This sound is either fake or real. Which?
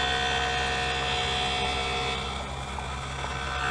real